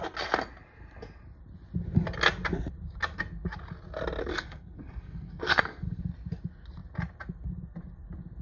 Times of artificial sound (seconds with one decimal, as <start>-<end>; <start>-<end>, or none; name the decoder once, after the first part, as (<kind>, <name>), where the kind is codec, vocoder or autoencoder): 4.2-6.0 (codec, SNAC)